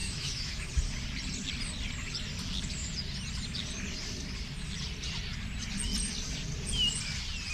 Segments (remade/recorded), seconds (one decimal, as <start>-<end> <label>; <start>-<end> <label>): 0.0-0.7 remade; 0.7-7.5 recorded